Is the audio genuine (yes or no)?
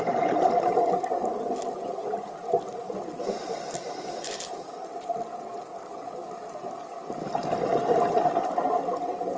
yes